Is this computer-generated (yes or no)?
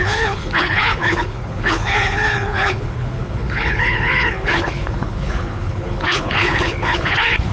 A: yes